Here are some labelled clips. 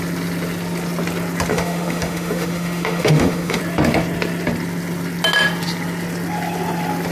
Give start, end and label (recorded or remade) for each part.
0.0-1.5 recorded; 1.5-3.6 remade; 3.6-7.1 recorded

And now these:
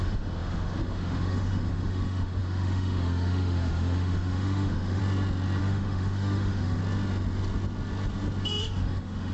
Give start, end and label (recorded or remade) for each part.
0.0-5.0 remade; 5.0-5.6 recorded; 5.6-6.8 remade; 6.8-8.6 recorded; 8.6-9.3 remade